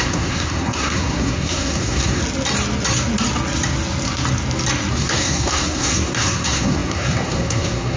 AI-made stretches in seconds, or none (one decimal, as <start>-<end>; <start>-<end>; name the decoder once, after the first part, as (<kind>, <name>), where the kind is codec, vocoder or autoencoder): 0.0-2.2 (codec, SNAC); 4.9-8.0